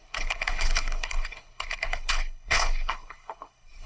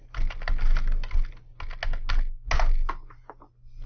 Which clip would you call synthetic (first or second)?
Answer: first